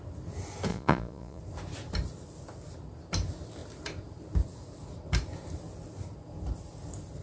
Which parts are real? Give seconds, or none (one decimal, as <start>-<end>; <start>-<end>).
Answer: 0.0-0.7; 1.4-7.2